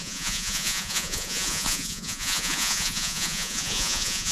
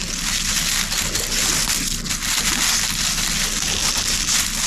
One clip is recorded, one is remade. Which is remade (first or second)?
first